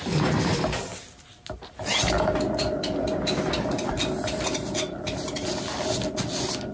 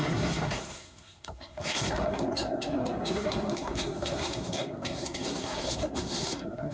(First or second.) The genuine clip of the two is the first